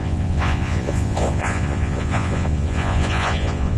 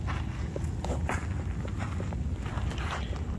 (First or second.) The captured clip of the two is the second